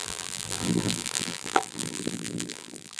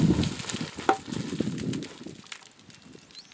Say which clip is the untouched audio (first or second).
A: second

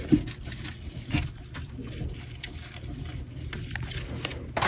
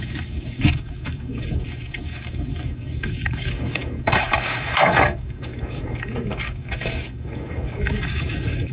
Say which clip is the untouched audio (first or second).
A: first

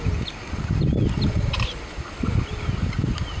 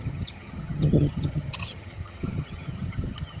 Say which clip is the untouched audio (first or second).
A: first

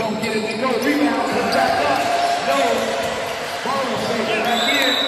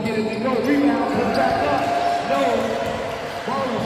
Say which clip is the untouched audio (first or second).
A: second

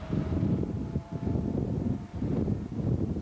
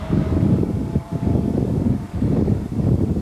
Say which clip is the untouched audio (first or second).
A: first